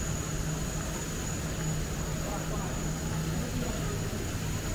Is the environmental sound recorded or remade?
recorded